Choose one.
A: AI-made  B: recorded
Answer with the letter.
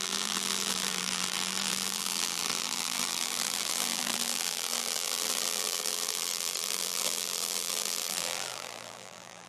A